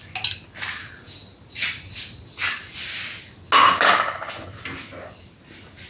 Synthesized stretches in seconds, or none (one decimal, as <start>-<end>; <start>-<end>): none